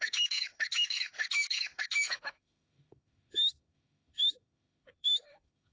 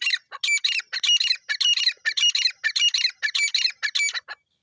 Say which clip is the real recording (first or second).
second